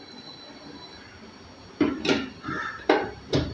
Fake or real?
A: real